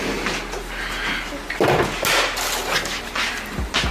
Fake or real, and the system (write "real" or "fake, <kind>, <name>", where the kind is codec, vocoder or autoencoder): real